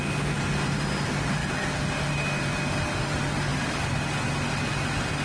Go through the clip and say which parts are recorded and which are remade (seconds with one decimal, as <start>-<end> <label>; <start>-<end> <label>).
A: 0.0-5.2 recorded

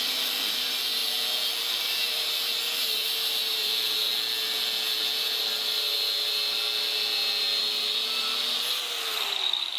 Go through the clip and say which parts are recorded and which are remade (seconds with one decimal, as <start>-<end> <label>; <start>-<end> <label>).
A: 0.0-1.0 remade; 1.0-1.6 recorded; 1.6-3.7 remade; 3.7-8.2 recorded; 8.2-9.8 remade